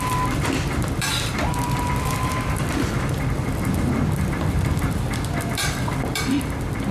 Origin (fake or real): fake